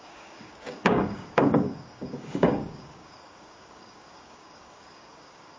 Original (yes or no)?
no